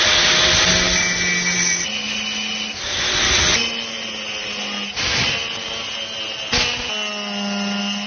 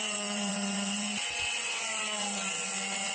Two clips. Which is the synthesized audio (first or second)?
second